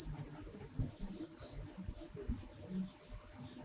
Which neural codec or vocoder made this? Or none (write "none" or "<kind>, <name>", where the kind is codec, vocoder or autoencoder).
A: none